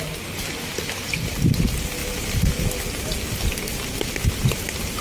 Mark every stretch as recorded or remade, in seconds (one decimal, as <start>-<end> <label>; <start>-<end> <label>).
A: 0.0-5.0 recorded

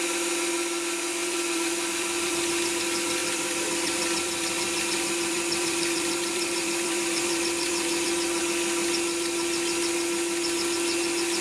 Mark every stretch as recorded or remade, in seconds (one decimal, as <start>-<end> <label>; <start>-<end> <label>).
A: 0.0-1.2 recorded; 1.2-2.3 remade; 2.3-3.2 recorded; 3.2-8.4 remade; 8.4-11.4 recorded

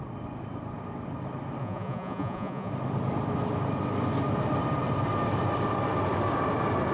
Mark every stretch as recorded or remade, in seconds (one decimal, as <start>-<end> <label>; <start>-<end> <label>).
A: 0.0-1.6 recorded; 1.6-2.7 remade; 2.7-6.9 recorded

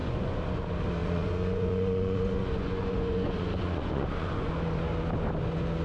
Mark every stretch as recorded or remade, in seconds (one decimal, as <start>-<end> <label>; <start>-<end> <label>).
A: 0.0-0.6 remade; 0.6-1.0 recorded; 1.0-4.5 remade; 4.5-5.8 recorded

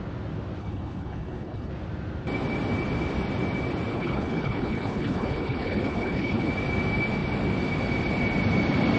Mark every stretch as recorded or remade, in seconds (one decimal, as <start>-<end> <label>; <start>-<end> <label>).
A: 0.0-0.6 recorded; 0.6-1.7 remade; 1.7-3.9 recorded; 3.9-6.5 remade; 6.5-9.0 recorded